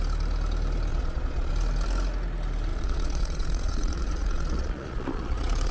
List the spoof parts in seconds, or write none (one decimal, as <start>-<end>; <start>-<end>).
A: 0.9-1.5; 2.7-5.7